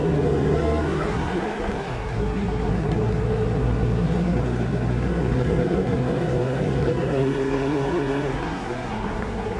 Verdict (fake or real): fake